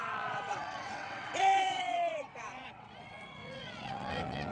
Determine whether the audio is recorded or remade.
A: remade